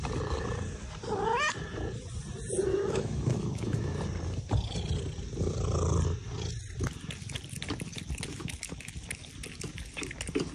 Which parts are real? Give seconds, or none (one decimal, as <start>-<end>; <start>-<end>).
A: 0.0-2.7; 4.0-8.3; 8.9-10.5